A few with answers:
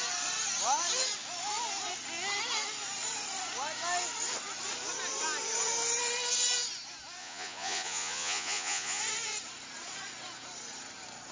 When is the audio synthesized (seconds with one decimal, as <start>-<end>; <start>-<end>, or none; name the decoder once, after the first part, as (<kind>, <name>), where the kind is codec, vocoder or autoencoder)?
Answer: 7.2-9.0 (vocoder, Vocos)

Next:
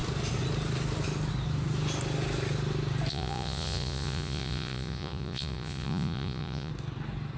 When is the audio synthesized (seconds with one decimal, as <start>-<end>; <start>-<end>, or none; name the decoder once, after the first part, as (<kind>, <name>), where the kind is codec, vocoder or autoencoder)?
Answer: 3.1-6.7 (vocoder, Vocos)

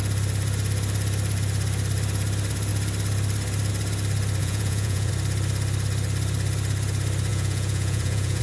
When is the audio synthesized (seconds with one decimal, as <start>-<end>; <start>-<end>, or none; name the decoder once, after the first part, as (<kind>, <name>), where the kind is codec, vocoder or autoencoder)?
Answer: 4.4-5.1 (vocoder, Vocos); 7.3-8.4

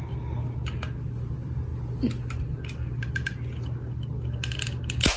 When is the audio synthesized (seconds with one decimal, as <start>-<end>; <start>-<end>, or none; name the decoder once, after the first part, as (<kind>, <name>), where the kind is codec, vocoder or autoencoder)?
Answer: none

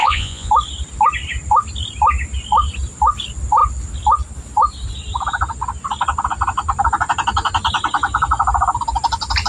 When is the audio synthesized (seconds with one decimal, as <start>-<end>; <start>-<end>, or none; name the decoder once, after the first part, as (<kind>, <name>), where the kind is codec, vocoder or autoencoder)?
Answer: 0.0-0.5 (vocoder, Vocos)

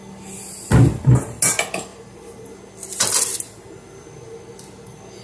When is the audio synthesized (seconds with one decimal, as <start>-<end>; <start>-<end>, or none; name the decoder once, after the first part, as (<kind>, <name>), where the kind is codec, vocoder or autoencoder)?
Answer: none

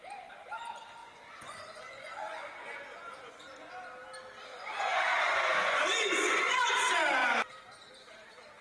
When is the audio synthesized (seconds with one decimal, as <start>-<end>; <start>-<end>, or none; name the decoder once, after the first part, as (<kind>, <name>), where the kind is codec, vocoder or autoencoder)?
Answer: 1.0-3.7 (vocoder, Vocos); 4.5-6.7